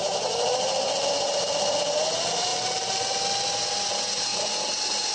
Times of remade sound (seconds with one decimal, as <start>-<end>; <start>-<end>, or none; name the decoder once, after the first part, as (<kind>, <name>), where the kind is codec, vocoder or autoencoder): 0.0-1.1 (vocoder, BigVGAN v2)